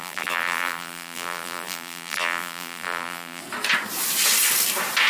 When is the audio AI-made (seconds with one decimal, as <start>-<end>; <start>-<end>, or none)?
0.0-3.4